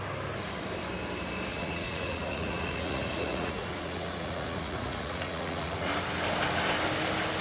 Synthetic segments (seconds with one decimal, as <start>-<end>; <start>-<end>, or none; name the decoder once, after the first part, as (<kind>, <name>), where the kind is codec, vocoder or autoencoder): 1.5-5.9 (vocoder, Vocos)